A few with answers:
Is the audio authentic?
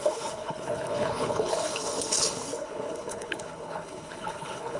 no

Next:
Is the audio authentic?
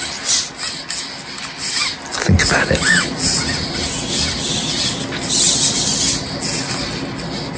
yes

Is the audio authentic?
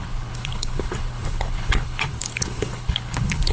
no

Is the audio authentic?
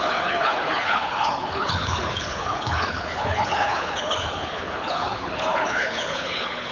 no